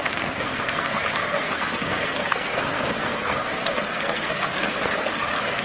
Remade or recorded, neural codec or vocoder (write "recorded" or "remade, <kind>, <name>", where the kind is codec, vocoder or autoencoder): remade, codec, SNAC